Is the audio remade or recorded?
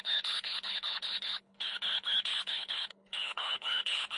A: remade